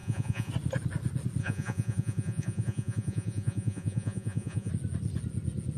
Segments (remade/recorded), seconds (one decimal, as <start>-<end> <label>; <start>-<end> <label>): 0.0-0.5 remade; 0.5-1.4 recorded; 1.4-4.7 remade; 4.7-5.8 recorded